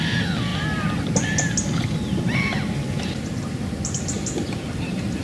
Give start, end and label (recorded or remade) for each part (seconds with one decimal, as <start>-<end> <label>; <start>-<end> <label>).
0.0-5.2 recorded